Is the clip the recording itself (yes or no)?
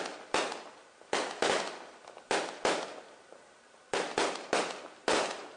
yes